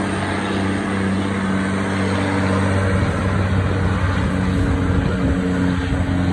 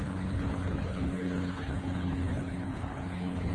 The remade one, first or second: second